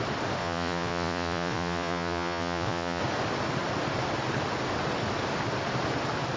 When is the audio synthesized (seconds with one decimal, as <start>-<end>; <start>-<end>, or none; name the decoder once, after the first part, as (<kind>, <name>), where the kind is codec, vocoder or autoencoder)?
0.4-3.0 (vocoder, Vocos)